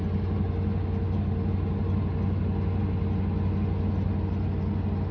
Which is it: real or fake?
real